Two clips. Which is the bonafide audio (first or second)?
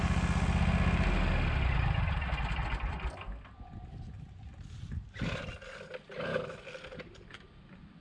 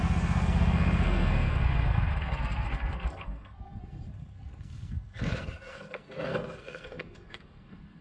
first